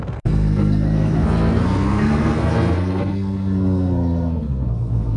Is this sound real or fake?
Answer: fake